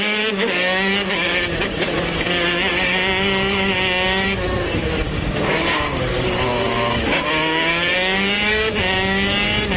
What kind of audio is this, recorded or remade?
remade